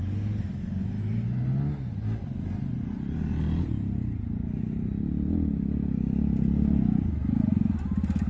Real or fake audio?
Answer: real